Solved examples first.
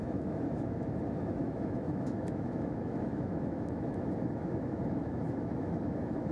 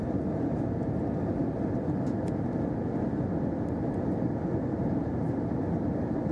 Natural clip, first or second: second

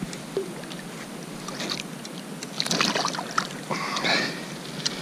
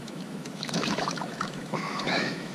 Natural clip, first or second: first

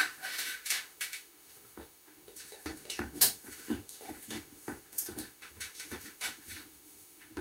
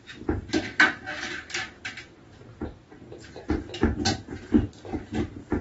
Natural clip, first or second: second